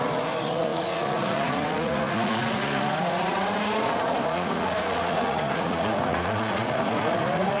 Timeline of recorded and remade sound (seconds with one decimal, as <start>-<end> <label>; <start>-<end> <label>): 0.0-7.6 remade